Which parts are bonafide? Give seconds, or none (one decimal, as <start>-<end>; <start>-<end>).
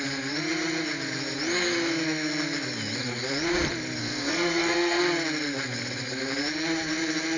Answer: 0.0-4.0; 5.0-7.4